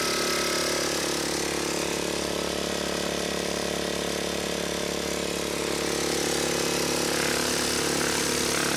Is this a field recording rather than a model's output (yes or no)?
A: yes